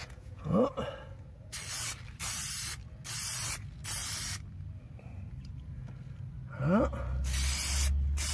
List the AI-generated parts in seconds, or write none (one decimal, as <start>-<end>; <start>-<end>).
0.0-0.6